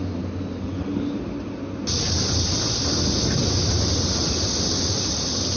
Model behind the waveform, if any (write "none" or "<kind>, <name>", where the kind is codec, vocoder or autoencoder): none